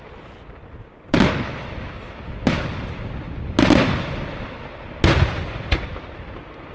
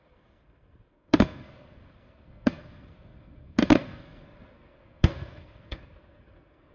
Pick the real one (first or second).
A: first